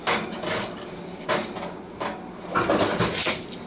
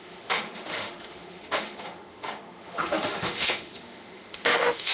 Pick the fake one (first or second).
second